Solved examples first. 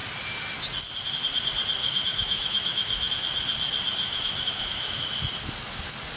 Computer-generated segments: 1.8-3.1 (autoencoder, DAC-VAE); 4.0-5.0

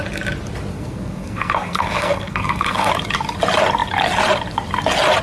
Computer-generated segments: 0.7-2.9 (codec, SNAC)

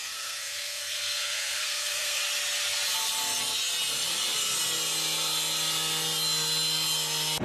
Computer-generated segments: 0.0-2.2 (codec, SNAC)